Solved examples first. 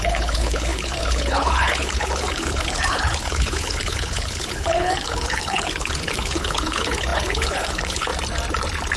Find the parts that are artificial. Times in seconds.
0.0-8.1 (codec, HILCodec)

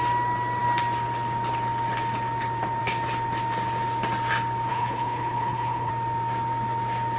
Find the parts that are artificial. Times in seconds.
4.7-5.9 (codec, HILCodec)

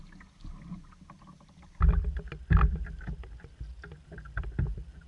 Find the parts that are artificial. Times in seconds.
none

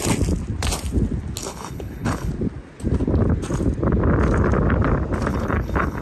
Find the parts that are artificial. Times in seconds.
1.4-2.3 (codec, HILCodec); 5.3-6.0

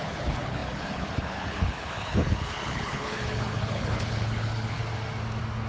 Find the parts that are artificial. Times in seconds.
0.0-4.8 (codec, HILCodec)

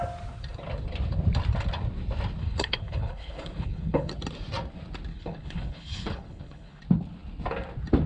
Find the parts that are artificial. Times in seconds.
2.4-4.1 (codec, HILCodec); 5.1-6.8

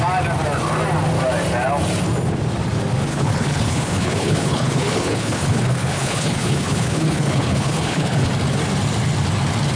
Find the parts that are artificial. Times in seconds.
3.1-8.3 (codec, HILCodec)